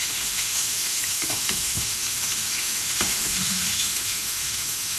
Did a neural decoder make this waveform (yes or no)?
yes